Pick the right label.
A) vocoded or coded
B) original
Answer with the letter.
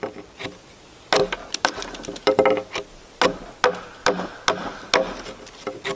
B